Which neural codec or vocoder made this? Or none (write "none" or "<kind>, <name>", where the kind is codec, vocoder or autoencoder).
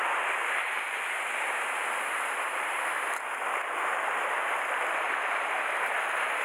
none